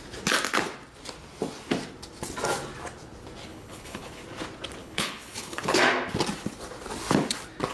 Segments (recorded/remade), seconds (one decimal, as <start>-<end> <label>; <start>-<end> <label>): 0.0-3.5 recorded; 3.5-4.2 remade; 4.2-4.8 recorded; 4.8-5.8 remade; 5.8-7.7 recorded